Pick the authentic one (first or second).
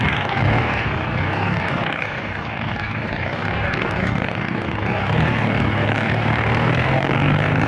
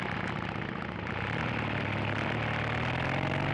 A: second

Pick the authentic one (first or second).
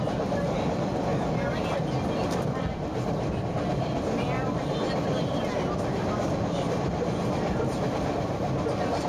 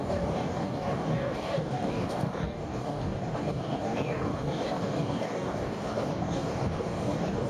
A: first